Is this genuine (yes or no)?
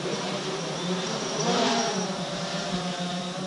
no